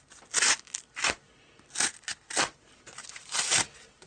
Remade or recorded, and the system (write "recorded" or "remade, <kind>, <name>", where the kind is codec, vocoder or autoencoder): recorded